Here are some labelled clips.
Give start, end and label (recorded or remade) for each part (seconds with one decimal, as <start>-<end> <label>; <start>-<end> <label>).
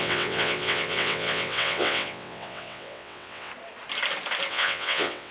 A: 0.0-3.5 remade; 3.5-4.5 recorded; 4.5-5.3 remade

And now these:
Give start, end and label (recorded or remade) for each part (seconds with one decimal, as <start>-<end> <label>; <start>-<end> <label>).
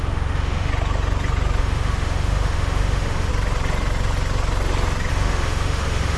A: 0.0-0.7 remade; 0.7-1.6 recorded; 1.6-3.3 remade; 3.3-5.1 recorded; 5.1-6.2 remade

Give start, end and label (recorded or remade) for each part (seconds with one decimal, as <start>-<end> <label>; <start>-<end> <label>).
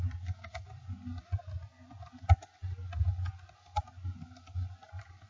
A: 0.0-5.3 recorded